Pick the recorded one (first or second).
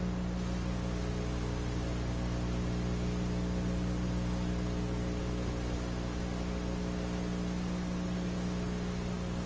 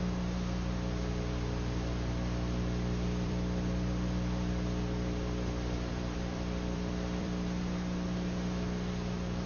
first